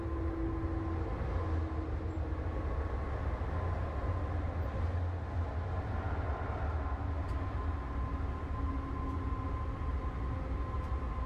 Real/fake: real